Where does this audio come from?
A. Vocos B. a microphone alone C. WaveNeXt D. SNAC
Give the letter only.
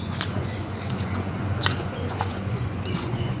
A